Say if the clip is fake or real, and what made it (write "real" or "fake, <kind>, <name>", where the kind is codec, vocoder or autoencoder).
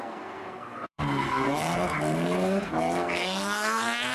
fake, codec, SNAC